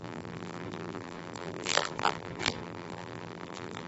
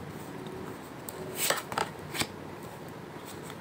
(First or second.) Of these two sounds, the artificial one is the first